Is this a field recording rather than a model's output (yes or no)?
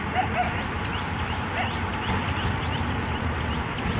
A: yes